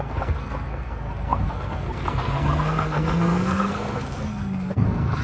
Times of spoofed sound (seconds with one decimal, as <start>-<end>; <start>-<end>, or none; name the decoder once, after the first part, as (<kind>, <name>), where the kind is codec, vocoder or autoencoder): 0.0-5.2 (codec, SNAC)